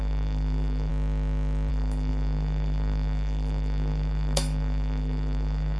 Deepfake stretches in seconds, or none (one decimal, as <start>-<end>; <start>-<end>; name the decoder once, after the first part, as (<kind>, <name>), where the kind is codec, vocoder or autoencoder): 0.0-0.9 (codec, SNAC); 1.7-5.8